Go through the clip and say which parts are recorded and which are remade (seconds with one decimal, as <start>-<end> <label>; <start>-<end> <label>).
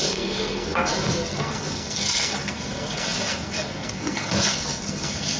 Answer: 0.0-5.4 remade